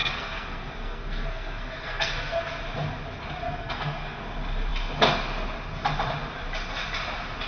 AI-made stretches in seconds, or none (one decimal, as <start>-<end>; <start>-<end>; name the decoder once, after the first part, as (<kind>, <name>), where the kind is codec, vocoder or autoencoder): 0.0-2.6 (codec, SNAC); 3.4-4.2